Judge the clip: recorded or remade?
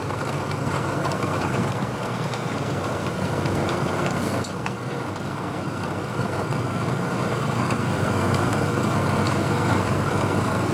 remade